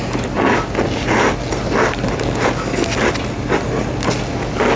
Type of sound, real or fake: real